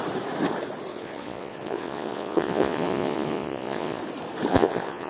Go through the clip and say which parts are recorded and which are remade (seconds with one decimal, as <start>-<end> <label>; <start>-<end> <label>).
0.0-0.9 recorded; 0.9-4.0 remade; 4.0-4.5 recorded; 4.5-5.1 remade